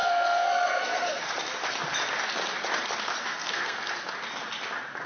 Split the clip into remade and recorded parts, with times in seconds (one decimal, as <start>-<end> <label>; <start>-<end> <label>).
0.0-1.3 remade; 1.3-3.2 recorded; 3.2-3.9 remade; 3.9-5.1 recorded